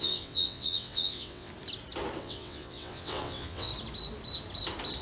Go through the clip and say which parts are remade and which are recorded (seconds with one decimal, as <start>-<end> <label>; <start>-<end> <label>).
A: 0.0-1.5 remade; 1.5-2.2 recorded; 2.2-3.7 remade; 3.7-5.0 recorded